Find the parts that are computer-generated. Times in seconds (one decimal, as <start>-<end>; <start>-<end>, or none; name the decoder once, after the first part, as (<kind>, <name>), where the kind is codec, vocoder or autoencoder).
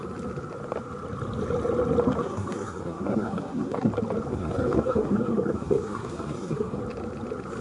2.2-3.9 (codec, SNAC); 4.3-6.8